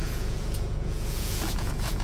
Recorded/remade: remade